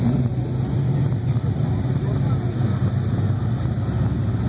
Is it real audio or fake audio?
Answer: real